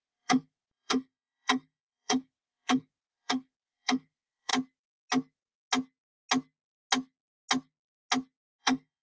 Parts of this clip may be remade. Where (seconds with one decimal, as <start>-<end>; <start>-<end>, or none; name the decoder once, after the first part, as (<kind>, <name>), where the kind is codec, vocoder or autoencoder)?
0.0-4.5 (codec, SNAC); 8.6-9.0

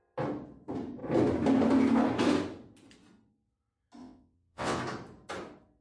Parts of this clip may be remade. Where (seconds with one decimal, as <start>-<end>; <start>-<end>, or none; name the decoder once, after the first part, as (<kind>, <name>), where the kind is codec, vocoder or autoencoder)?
4.0-4.8 (vocoder, WaveNeXt)